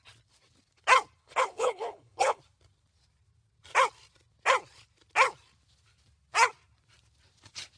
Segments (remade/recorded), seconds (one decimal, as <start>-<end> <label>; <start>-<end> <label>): 0.0-1.2 recorded; 1.2-2.4 remade; 2.4-7.8 recorded